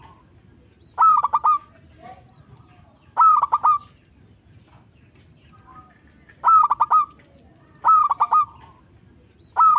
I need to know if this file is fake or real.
real